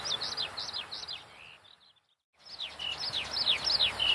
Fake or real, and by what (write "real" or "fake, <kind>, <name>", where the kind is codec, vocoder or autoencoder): real